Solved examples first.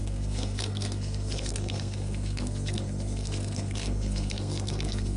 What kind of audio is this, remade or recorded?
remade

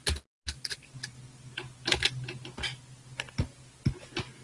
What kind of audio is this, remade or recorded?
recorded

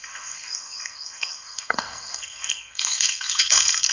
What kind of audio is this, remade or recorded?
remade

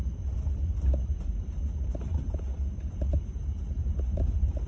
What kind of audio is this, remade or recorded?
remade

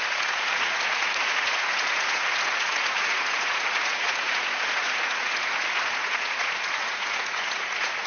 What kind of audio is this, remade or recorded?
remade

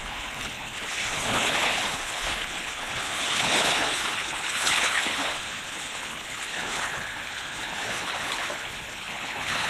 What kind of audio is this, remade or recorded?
remade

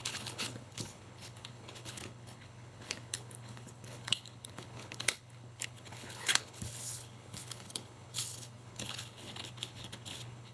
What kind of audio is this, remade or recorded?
remade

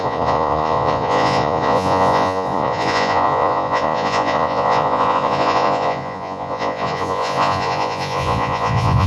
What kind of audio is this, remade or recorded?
remade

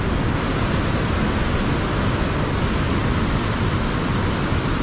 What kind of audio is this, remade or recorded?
recorded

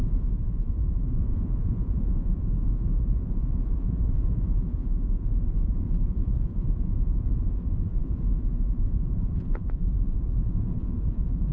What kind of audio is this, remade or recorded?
remade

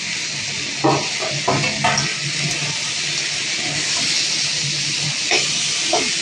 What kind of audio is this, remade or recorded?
recorded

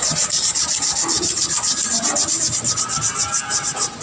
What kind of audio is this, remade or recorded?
recorded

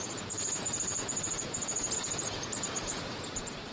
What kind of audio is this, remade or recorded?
remade